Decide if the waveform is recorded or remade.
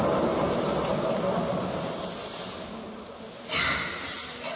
recorded